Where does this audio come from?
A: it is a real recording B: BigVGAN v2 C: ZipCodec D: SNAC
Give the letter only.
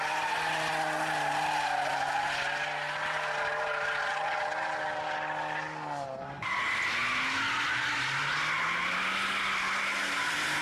A